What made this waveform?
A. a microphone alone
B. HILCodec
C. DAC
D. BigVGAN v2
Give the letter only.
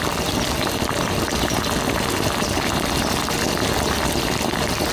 A